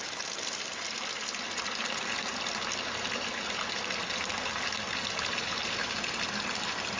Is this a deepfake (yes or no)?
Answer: no